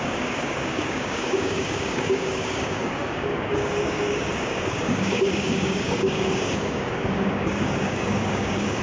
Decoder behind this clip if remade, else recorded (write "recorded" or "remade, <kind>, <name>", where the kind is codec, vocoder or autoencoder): remade, codec, DAC